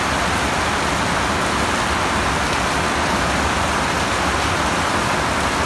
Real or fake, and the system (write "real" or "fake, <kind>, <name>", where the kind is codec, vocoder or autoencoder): real